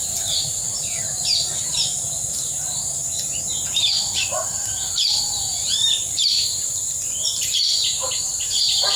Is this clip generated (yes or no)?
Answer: yes